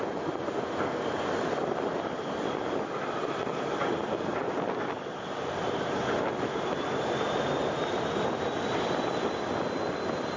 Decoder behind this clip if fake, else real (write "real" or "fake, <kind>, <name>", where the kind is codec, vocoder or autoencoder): real